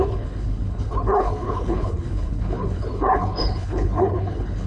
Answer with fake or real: fake